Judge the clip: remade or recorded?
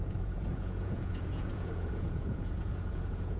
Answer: remade